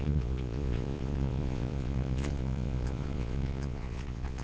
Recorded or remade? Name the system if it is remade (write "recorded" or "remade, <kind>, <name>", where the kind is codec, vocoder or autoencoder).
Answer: remade, vocoder, Vocos